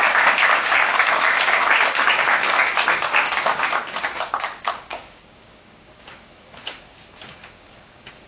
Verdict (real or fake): fake